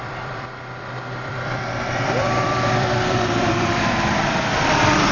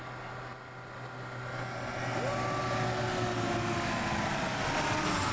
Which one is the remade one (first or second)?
first